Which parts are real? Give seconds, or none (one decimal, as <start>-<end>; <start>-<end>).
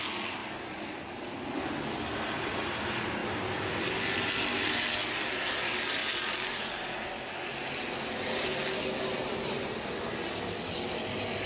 0.0-3.2; 4.0-6.0; 6.6-11.5